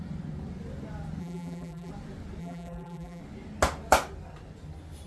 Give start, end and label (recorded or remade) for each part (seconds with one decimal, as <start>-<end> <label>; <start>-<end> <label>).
0.0-1.2 recorded; 1.2-1.9 remade; 1.9-2.4 recorded; 2.4-3.2 remade; 3.2-5.1 recorded